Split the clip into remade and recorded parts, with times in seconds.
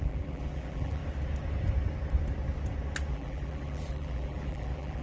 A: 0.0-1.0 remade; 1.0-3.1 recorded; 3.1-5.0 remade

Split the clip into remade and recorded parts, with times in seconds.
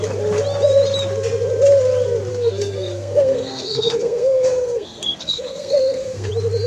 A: 0.0-2.3 recorded; 2.3-6.3 remade; 6.3-6.7 recorded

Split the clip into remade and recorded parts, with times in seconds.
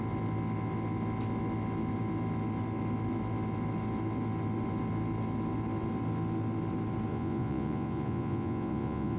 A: 0.0-7.1 recorded; 7.1-9.2 remade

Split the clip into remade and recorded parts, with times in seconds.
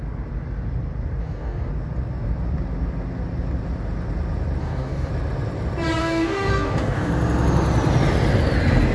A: 0.0-1.2 recorded; 1.2-1.7 remade; 1.7-4.6 recorded; 4.6-5.1 remade; 5.1-6.0 recorded; 6.0-7.1 remade; 7.1-8.9 recorded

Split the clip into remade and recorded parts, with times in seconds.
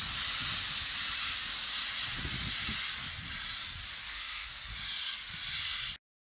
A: 0.0-4.0 recorded; 4.0-4.7 remade; 4.7-6.3 recorded